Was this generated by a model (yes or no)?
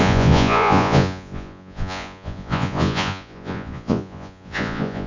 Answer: yes